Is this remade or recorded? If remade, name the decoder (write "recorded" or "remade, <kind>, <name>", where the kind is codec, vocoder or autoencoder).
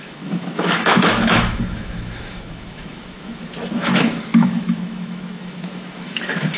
remade, autoencoder, DAC-VAE